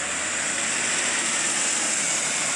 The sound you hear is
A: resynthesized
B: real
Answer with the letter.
B